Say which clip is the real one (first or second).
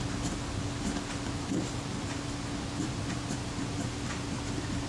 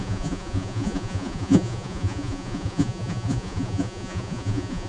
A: first